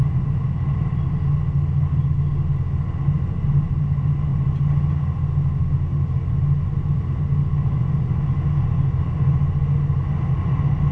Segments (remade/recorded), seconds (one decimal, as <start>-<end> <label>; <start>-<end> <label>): 0.0-10.9 recorded